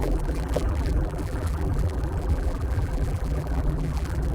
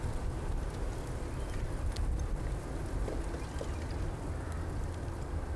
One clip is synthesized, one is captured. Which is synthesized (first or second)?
first